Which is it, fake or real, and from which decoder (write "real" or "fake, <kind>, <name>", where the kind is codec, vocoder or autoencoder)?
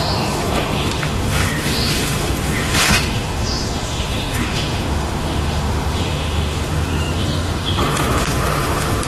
fake, autoencoder, DAC-VAE